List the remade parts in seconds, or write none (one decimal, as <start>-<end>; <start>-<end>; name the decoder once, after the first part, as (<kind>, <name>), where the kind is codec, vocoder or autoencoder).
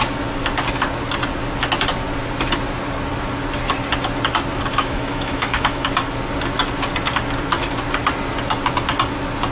4.7-5.8 (autoencoder, DAC-VAE)